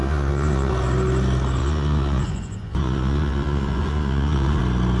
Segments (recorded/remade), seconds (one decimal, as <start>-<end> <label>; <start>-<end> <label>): 0.0-0.7 remade; 0.7-1.6 recorded; 1.6-4.6 remade; 4.6-5.0 recorded